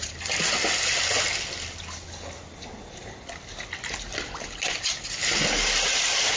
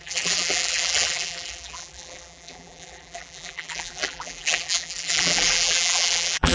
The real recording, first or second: first